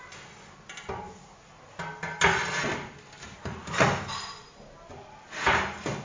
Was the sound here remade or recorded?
recorded